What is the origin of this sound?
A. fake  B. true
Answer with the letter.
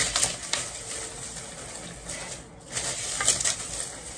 B